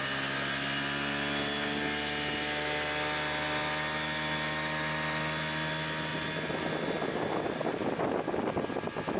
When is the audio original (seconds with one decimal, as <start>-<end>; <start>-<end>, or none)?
0.0-9.2